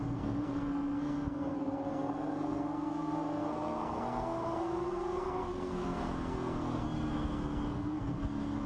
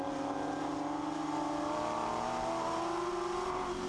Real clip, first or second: second